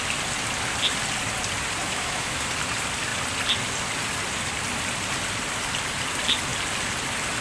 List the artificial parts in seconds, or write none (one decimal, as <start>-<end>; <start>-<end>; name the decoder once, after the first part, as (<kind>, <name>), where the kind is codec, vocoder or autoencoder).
1.8-2.5 (autoencoder, DAC-VAE)